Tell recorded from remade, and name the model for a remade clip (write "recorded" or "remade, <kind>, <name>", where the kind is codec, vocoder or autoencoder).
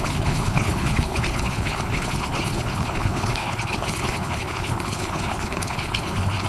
remade, codec, HILCodec